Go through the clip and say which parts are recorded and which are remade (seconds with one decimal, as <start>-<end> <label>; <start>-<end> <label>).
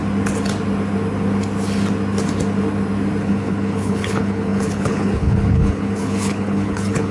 0.0-3.2 recorded; 3.2-7.1 remade